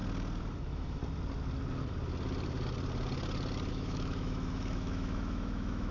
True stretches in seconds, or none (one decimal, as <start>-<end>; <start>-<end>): 0.0-0.6; 1.0-3.7